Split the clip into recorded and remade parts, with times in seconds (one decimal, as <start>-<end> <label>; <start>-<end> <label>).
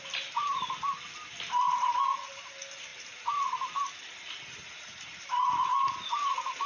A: 0.0-6.7 recorded